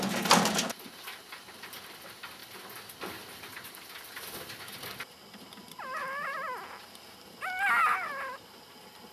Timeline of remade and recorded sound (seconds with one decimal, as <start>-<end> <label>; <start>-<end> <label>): 0.0-9.1 recorded